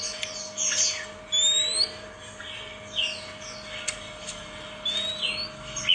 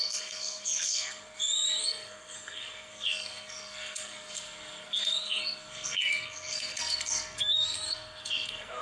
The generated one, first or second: second